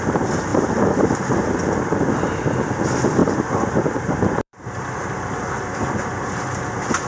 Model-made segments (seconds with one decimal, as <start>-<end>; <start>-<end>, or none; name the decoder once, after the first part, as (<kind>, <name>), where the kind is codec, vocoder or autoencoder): 0.5-1.1 (vocoder, BigVGAN v2); 3.2-5.0